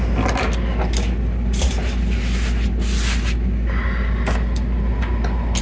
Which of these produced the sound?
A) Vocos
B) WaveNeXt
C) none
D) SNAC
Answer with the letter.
C